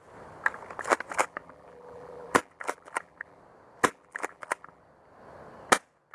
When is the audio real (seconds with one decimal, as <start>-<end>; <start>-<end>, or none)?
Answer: 0.0-1.2; 3.4-3.8; 4.8-6.1

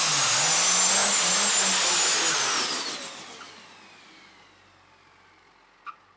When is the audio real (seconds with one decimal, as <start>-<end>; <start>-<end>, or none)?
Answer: 0.0-6.2

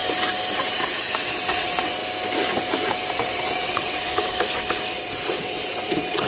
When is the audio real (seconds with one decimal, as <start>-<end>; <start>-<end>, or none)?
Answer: 0.0-0.5; 2.0-3.1; 4.1-4.9

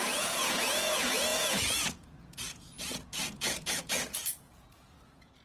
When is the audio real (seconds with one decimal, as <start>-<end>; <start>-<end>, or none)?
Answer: none

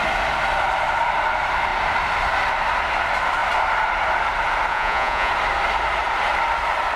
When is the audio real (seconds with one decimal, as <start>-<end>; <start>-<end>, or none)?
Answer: 0.0-4.7; 5.3-7.0